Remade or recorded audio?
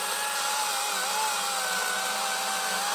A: recorded